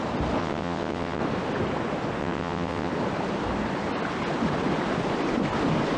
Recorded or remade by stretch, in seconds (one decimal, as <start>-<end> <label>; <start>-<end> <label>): 0.0-0.4 recorded; 0.4-1.2 remade; 1.2-2.2 recorded; 2.2-2.9 remade; 2.9-6.0 recorded